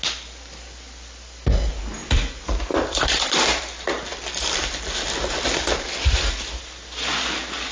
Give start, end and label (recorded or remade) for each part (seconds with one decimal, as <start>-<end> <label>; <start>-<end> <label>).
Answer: 0.0-2.0 recorded; 2.0-3.6 remade; 3.6-4.1 recorded; 4.1-6.2 remade; 6.2-7.7 recorded